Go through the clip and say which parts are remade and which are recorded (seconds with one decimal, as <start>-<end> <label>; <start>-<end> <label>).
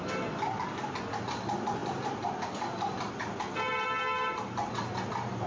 0.0-5.5 recorded